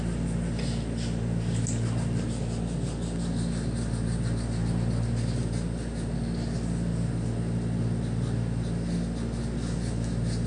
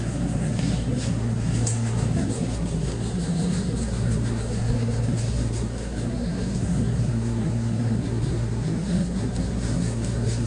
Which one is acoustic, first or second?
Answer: first